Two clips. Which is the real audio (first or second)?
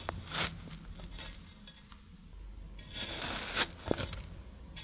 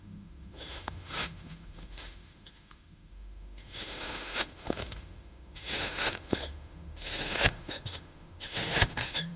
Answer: first